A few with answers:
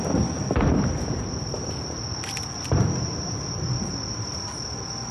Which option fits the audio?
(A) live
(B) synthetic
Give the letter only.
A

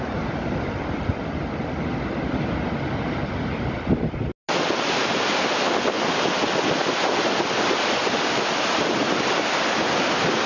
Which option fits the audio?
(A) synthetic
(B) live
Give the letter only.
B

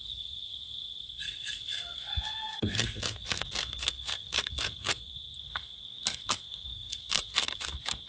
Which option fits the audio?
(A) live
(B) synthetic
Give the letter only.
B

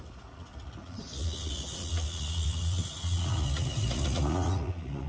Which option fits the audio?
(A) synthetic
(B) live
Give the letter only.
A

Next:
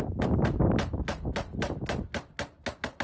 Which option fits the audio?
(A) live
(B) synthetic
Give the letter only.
A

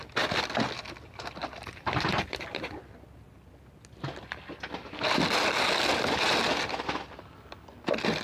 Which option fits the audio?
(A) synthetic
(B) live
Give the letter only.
B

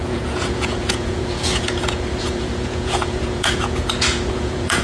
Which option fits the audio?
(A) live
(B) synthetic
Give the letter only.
B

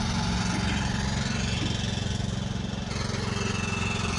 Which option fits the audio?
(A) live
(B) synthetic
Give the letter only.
A